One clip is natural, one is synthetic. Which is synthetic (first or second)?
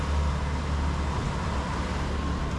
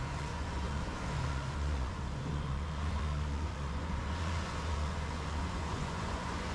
second